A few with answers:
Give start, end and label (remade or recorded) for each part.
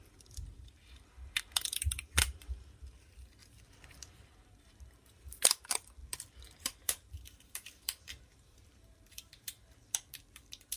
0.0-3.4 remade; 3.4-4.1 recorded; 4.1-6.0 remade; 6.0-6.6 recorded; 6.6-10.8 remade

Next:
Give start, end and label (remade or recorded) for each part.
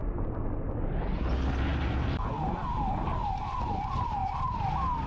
0.0-5.1 recorded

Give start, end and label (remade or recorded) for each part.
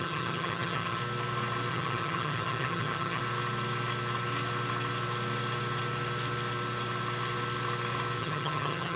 0.0-1.0 remade; 1.0-1.7 recorded; 1.7-3.2 remade; 3.2-8.2 recorded; 8.2-9.0 remade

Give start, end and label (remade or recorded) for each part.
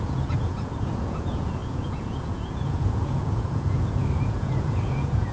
0.0-5.3 remade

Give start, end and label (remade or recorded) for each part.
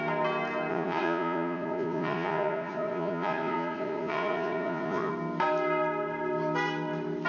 0.0-0.7 recorded; 0.7-5.1 remade; 5.1-7.3 recorded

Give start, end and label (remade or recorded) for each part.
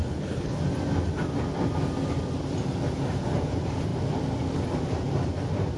0.0-0.6 remade; 0.6-5.8 recorded